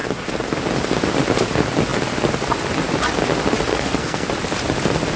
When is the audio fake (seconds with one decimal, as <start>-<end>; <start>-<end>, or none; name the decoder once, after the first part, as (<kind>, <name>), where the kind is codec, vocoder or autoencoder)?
3.7-4.3 (codec, SNAC)